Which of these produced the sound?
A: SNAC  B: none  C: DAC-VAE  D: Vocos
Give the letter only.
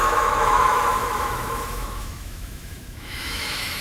C